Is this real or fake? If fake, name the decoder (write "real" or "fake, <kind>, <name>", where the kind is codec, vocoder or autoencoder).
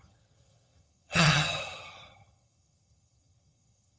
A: fake, vocoder, HiFi-GAN